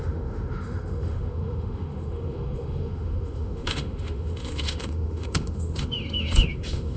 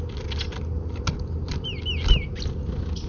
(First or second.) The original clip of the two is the second